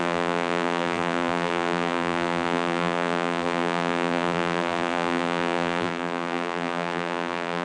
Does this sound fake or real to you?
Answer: fake